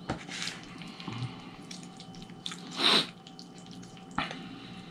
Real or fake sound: real